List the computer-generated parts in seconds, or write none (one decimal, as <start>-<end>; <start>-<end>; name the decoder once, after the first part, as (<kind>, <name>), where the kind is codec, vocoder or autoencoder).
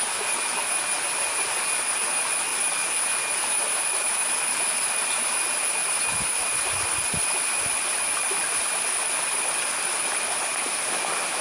none